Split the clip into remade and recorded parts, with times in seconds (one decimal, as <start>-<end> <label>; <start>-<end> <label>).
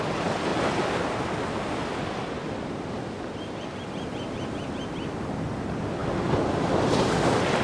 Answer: 0.0-0.5 remade; 0.5-5.1 recorded; 5.1-7.6 remade